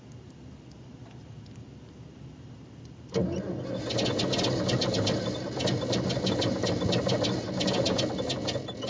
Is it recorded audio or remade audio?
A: recorded